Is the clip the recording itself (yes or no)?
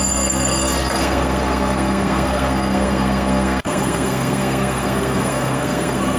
no